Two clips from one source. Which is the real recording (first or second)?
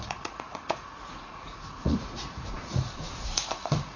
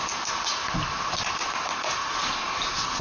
second